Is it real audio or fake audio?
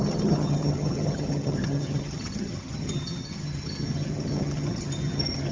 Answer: fake